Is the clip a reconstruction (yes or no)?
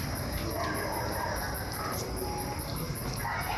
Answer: no